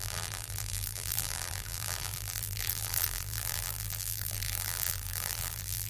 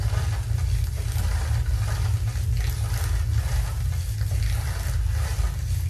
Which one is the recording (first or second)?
second